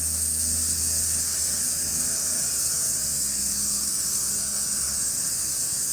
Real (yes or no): no